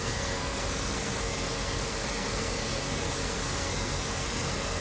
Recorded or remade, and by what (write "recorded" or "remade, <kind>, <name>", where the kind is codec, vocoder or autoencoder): remade, codec, SNAC